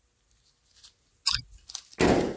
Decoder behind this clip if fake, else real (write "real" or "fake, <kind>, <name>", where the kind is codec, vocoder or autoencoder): real